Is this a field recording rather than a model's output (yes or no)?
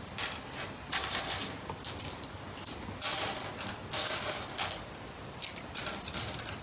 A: yes